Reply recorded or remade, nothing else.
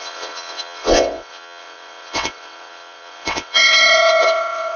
remade